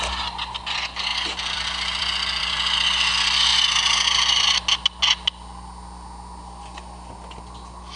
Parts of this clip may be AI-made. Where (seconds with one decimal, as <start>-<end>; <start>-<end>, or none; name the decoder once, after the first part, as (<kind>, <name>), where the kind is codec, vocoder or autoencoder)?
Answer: 1.1-2.5 (vocoder, BigVGAN v2)